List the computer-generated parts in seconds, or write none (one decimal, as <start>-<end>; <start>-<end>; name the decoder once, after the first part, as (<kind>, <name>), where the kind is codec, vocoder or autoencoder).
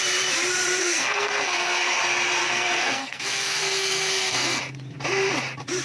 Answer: 0.8-2.0 (codec, SNAC); 2.4-4.6